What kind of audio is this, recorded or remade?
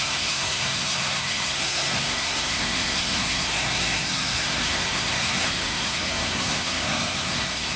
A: remade